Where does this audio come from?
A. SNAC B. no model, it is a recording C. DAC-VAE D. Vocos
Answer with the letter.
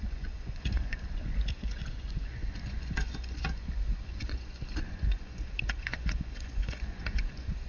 D